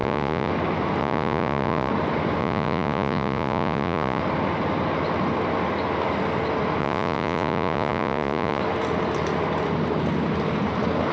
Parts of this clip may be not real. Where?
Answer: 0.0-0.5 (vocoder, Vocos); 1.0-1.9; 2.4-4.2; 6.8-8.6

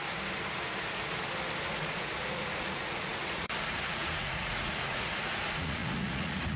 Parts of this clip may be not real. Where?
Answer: 1.6-6.6 (vocoder, Vocos)